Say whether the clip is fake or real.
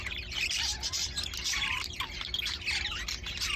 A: real